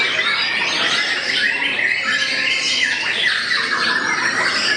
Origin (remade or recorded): recorded